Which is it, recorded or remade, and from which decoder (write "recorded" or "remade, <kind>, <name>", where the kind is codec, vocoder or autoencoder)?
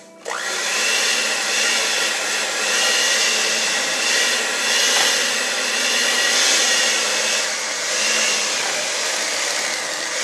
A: recorded